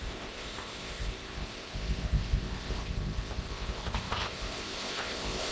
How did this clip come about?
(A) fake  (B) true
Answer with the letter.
A